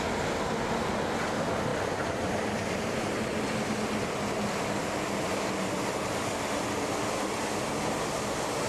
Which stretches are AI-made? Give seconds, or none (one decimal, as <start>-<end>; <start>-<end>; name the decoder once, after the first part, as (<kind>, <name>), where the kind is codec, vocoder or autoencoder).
1.7-2.3 (vocoder, BigVGAN v2)